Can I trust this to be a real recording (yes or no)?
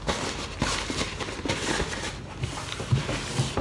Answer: yes